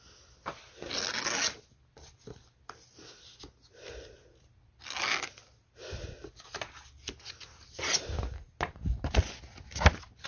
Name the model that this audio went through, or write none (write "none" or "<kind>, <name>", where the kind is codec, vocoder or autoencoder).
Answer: none